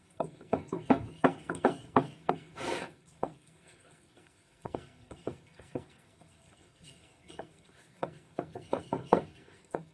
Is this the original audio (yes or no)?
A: no